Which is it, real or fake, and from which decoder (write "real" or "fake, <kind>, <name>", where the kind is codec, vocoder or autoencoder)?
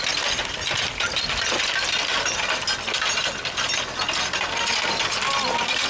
real